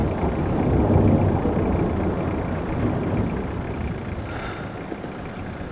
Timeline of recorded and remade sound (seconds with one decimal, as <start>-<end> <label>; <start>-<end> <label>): 0.0-5.7 recorded